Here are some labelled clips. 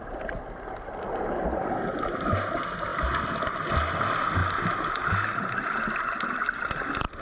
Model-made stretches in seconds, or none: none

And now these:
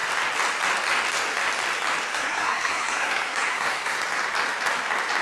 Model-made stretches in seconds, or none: 2.1-4.0

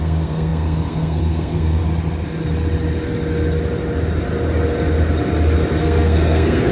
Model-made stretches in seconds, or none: 0.0-1.8; 5.8-6.7

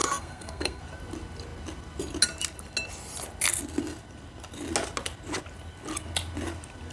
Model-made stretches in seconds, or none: 0.0-0.8

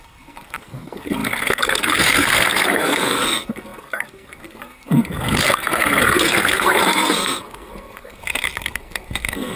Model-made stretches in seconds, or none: 0.0-9.6

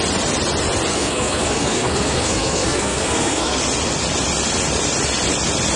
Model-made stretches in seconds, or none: 0.9-3.6